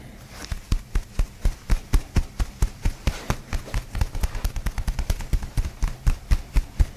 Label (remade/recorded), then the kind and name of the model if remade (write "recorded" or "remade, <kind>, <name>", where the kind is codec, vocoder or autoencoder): recorded